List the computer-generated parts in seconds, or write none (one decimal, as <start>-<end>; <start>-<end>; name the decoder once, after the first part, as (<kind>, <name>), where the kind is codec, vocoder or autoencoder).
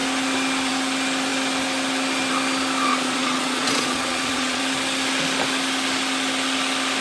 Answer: 2.9-4.6 (vocoder, Vocos)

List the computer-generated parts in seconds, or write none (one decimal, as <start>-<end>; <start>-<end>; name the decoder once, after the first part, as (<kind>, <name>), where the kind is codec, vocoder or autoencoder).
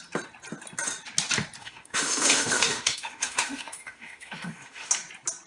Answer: 1.6-4.9 (autoencoder, DAC-VAE)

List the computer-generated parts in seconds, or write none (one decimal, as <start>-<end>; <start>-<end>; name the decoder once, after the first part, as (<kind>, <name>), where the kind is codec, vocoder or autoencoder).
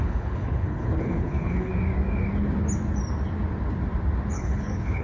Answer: 0.0-1.7 (codec, HILCodec); 4.3-5.0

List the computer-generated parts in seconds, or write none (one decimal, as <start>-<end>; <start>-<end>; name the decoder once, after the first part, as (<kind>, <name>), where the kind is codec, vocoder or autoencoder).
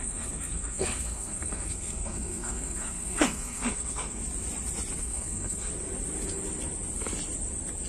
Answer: 0.0-4.2 (codec, SNAC); 5.0-5.7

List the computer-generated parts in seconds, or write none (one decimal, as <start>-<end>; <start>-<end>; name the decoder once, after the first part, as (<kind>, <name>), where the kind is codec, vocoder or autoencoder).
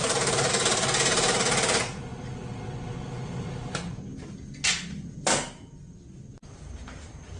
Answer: none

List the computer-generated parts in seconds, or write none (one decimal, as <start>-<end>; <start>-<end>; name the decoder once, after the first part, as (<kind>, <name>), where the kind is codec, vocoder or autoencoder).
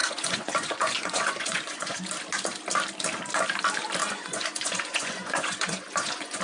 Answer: 0.0-2.0 (vocoder, Vocos); 4.0-6.4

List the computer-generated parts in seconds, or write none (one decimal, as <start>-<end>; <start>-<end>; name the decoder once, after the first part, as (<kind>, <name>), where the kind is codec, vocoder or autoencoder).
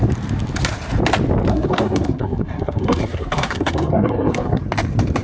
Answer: 1.5-4.6 (codec, SNAC)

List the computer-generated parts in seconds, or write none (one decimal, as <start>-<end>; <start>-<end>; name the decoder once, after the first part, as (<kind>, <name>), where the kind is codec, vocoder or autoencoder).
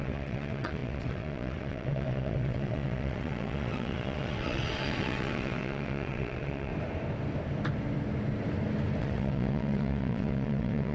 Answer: 0.0-6.7 (vocoder, WaveNeXt); 9.0-10.9